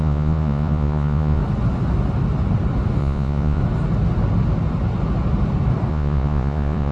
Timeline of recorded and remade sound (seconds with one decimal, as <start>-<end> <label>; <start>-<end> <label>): 0.0-1.4 remade; 1.4-3.0 recorded; 3.0-3.6 remade; 3.6-5.9 recorded; 5.9-6.9 remade